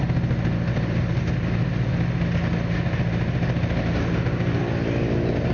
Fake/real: real